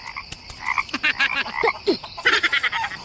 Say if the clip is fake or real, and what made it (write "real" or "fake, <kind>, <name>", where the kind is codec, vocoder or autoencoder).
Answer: real